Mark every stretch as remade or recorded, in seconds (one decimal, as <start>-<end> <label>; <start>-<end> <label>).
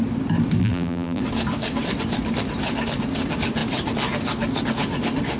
0.0-0.6 recorded; 0.6-1.2 remade; 1.2-5.4 recorded